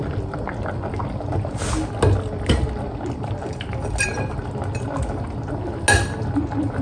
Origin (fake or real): real